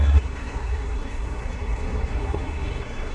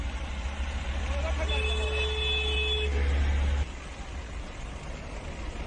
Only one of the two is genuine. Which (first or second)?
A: second